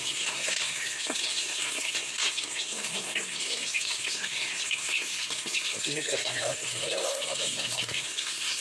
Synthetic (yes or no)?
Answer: yes